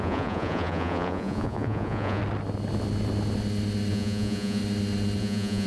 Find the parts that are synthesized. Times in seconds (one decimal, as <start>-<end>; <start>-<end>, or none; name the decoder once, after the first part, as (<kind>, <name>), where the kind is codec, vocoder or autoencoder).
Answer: 0.0-2.2 (vocoder, Vocos); 3.9-4.6; 5.2-5.7